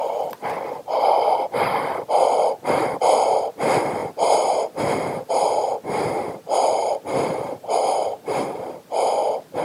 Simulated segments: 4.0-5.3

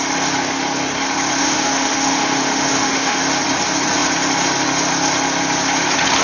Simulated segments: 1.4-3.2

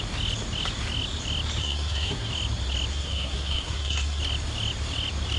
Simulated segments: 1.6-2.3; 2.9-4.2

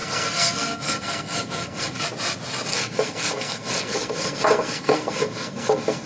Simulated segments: 0.0-2.0; 2.7-6.1

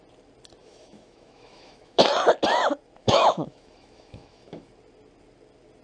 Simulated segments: 0.6-2.1; 3.0-4.7

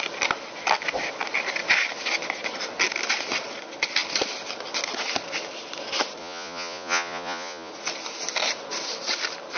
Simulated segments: 6.2-7.7

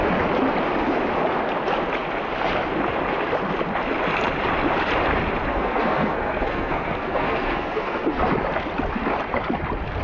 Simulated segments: 5.5-8.2

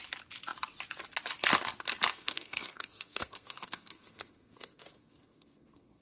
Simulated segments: 2.1-6.0